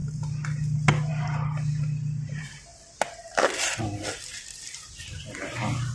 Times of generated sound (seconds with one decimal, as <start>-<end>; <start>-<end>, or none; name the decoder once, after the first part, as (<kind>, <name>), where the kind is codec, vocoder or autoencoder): none